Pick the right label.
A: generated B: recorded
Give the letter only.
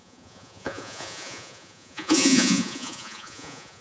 A